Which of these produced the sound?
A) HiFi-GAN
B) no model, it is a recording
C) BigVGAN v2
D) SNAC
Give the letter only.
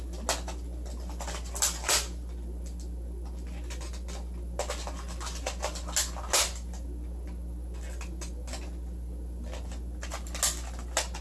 B